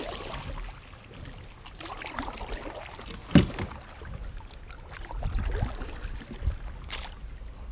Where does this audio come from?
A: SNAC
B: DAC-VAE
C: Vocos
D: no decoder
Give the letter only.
D